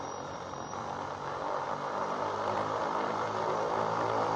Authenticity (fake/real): fake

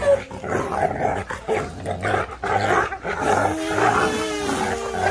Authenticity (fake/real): real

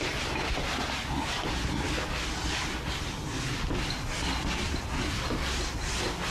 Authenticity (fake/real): real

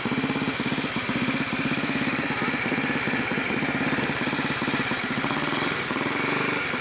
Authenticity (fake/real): fake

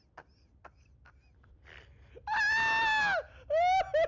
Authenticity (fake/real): real